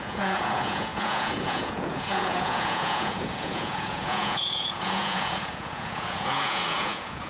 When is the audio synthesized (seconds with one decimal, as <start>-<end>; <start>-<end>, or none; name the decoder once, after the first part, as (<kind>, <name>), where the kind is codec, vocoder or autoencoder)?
0.0-7.3 (vocoder, Vocos)